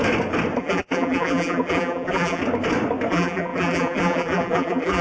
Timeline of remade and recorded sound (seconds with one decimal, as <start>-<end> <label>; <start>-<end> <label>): 0.0-0.6 recorded; 0.6-2.4 remade; 2.4-3.1 recorded; 3.1-5.0 remade